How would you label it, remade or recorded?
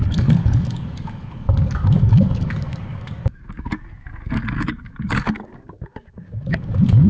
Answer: remade